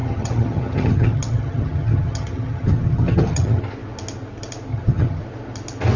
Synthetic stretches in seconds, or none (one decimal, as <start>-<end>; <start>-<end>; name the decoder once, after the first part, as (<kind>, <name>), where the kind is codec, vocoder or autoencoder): 0.0-3.6 (vocoder, HiFi-GAN); 4.7-5.2